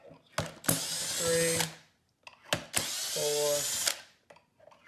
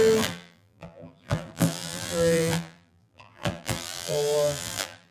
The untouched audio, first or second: first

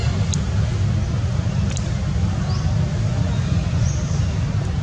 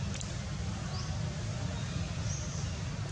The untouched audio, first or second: first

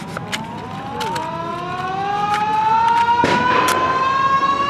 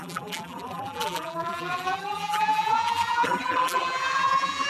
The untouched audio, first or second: first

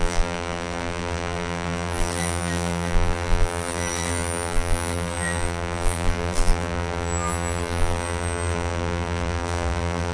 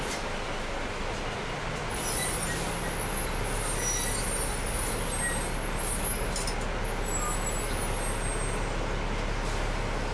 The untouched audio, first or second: second